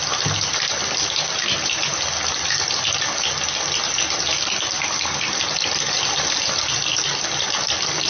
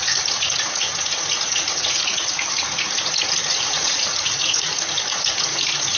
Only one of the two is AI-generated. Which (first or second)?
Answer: second